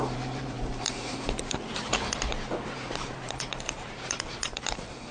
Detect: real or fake fake